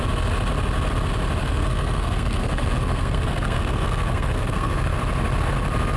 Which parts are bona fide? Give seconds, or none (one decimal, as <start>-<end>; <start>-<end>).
0.0-1.4; 5.0-6.0